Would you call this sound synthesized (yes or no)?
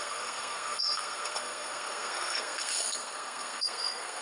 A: yes